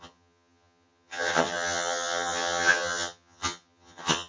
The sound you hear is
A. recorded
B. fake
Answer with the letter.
B